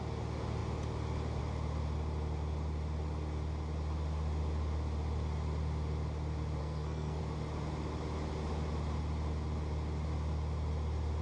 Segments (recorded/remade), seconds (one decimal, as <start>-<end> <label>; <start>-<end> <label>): 0.0-6.6 recorded; 6.6-7.2 remade; 7.2-11.2 recorded

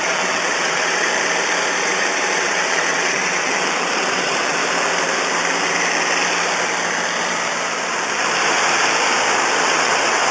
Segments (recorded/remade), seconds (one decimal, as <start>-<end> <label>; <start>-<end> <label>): 0.0-1.1 remade; 1.1-1.8 recorded; 1.8-4.6 remade; 4.6-9.6 recorded; 9.6-10.3 remade